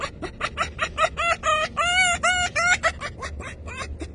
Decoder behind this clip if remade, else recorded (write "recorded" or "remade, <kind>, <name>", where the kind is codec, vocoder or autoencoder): recorded